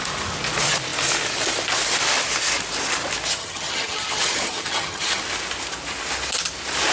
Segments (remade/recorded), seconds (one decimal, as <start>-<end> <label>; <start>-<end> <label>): 0.0-3.4 recorded; 3.4-5.2 remade; 5.2-6.9 recorded